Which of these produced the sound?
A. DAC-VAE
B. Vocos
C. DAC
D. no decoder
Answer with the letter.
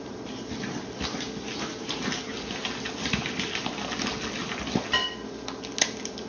D